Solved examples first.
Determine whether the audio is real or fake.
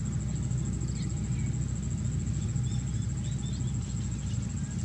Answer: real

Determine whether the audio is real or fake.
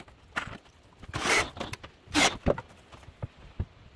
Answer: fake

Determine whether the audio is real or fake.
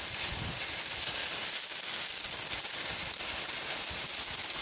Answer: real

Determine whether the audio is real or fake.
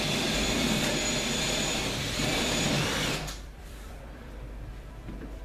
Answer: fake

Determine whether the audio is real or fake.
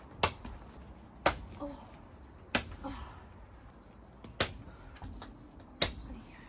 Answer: real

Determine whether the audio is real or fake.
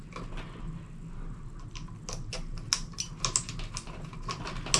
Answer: real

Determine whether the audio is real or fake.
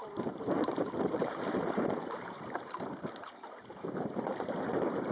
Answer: fake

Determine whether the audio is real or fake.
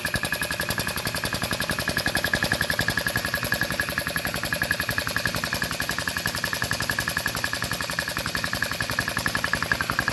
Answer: real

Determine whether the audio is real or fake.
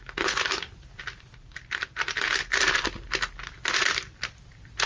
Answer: fake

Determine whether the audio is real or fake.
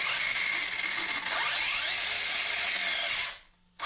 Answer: real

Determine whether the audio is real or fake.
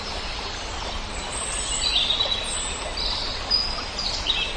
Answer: real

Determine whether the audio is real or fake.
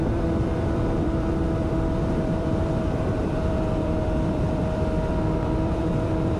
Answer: fake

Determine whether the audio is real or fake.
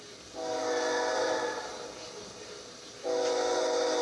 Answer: real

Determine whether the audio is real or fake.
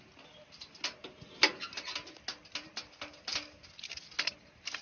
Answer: real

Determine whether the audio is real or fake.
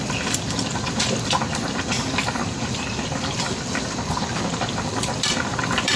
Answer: fake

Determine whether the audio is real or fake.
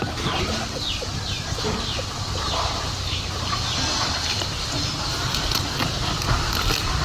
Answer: real